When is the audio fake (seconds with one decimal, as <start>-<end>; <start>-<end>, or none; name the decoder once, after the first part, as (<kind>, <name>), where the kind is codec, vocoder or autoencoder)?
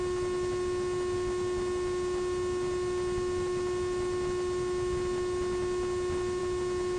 none